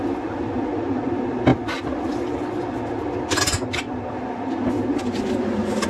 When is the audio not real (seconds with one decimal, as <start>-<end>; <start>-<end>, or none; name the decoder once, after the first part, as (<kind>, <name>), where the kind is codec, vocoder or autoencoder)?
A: none